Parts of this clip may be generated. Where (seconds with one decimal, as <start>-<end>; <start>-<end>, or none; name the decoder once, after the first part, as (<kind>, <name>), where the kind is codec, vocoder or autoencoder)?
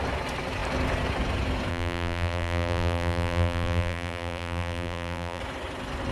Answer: 1.7-5.4 (vocoder, BigVGAN v2)